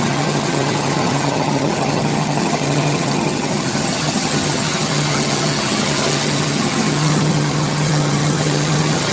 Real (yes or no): no